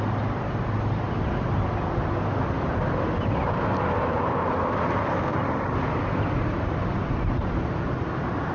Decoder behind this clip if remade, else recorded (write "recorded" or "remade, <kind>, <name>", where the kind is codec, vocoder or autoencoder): recorded